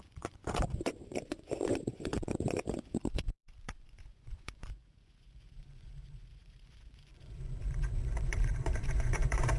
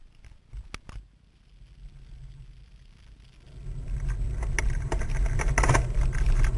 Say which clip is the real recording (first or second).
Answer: second